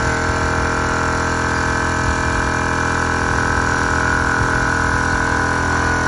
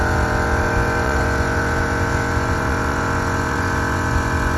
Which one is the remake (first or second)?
second